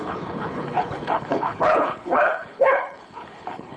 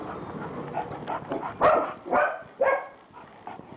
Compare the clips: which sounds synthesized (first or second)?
first